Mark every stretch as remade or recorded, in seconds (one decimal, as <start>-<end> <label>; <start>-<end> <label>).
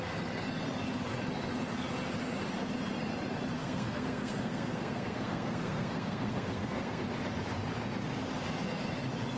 0.0-3.6 recorded; 3.6-7.0 remade; 7.0-9.4 recorded